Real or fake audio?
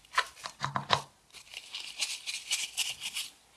real